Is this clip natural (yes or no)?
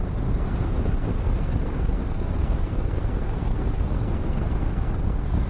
no